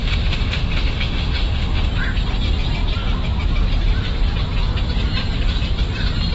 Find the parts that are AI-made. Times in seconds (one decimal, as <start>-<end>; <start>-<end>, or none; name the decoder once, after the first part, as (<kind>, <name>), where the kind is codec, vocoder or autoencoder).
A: 0.0-1.9 (autoencoder, DAC-VAE)

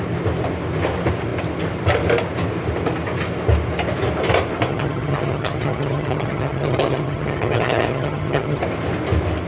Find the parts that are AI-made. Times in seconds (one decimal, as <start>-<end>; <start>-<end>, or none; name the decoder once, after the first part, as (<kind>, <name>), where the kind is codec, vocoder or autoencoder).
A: 4.7-8.6 (vocoder, HiFi-GAN)